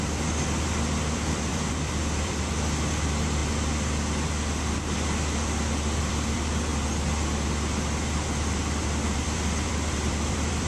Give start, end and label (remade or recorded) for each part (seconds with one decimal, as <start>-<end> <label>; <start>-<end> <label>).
0.0-3.4 remade; 3.4-6.0 recorded; 6.0-6.7 remade; 6.7-8.8 recorded; 8.8-10.7 remade